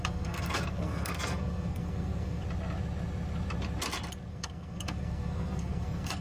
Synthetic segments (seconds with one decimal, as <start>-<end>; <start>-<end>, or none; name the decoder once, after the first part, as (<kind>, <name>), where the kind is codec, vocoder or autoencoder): 0.0-2.4 (codec, SNAC); 4.3-6.2